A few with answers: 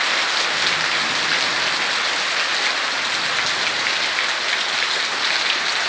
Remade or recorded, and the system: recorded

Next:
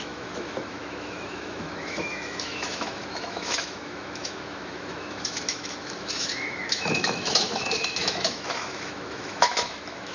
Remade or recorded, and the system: remade, autoencoder, DAC-VAE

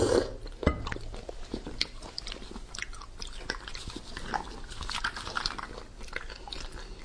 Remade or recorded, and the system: recorded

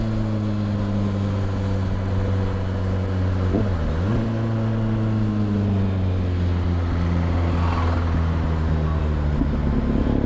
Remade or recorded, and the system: recorded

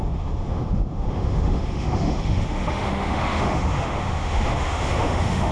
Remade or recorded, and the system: remade, autoencoder, DAC-VAE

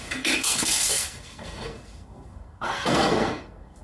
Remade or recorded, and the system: remade, codec, SNAC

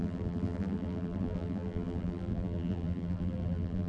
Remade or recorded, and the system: remade, vocoder, BigVGAN v2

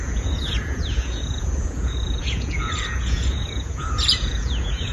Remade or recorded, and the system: remade, vocoder, Vocos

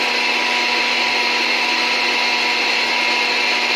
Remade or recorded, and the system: recorded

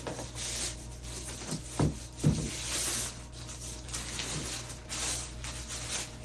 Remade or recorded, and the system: recorded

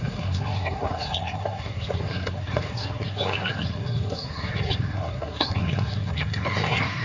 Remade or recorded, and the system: remade, codec, SNAC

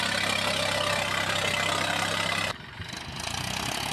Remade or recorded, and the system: recorded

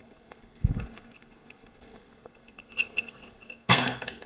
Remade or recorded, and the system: remade, codec, SNAC